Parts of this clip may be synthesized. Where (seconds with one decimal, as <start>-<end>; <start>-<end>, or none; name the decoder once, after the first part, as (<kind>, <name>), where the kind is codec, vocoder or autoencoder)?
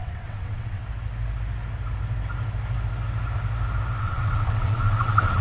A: 0.0-0.8 (vocoder, WaveNeXt); 4.0-5.4